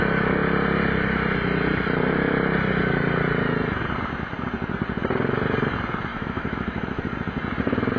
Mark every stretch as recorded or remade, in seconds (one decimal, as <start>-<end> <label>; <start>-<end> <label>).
0.0-6.1 recorded; 6.1-7.0 remade; 7.0-8.0 recorded